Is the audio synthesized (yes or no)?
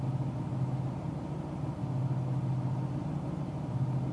no